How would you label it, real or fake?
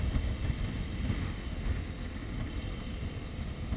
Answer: real